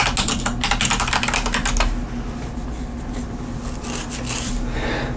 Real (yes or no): yes